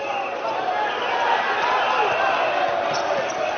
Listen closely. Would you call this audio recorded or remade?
recorded